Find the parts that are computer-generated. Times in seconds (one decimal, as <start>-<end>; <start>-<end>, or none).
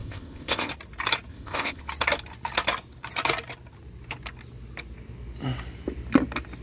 0.0-0.7; 1.3-1.8